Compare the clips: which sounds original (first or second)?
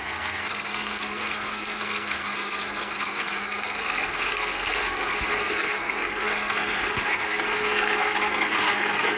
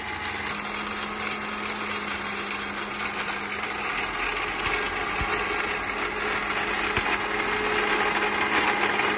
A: second